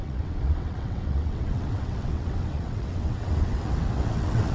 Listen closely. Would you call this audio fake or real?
fake